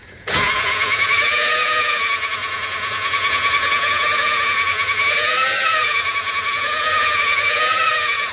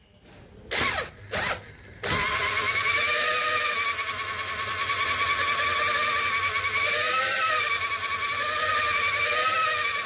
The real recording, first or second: second